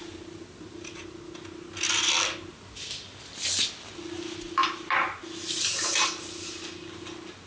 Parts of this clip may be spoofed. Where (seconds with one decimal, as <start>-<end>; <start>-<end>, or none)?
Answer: none